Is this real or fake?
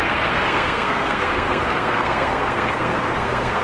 fake